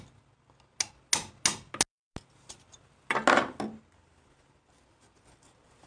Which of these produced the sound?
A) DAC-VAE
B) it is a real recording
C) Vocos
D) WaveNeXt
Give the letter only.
B